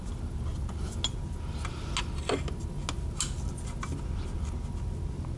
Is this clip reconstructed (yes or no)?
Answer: no